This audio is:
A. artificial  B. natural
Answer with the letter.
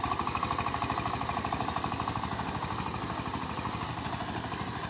B